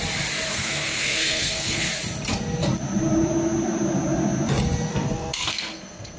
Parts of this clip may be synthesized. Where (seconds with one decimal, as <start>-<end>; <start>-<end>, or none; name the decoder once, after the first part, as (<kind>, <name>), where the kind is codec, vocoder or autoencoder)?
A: 0.5-1.9 (codec, SNAC); 4.9-6.2